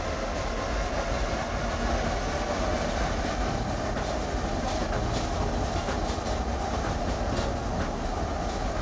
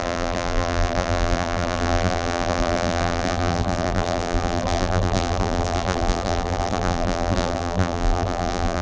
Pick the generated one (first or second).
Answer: second